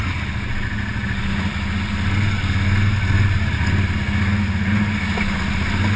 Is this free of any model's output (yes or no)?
yes